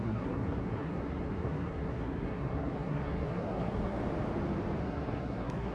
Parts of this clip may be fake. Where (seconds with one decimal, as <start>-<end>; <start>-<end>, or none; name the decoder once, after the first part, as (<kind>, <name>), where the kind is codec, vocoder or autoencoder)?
0.0-4.0 (codec, SNAC); 4.8-5.7